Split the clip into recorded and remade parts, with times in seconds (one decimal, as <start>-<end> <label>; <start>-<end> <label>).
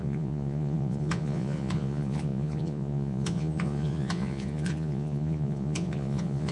0.0-6.5 remade